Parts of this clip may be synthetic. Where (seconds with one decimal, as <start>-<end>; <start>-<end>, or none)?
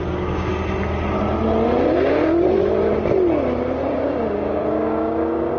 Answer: 0.0-0.5; 3.9-5.6